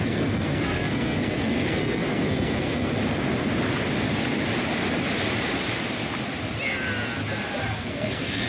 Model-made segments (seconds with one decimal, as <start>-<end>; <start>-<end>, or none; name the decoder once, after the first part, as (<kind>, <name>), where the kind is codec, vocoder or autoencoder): 0.0-2.9 (codec, SNAC); 7.7-8.5